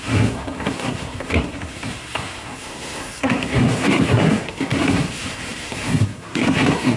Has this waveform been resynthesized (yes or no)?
yes